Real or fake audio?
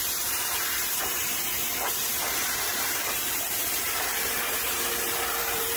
fake